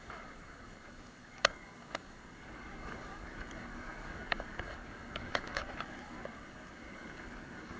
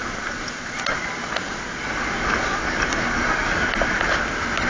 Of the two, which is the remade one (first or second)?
first